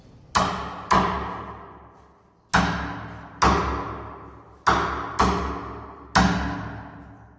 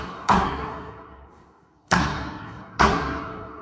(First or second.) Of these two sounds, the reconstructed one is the second